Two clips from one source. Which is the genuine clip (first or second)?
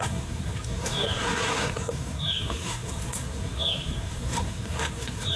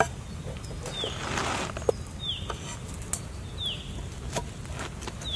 second